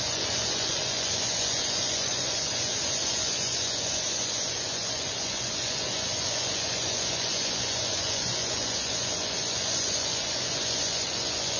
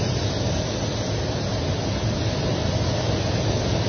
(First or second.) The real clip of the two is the second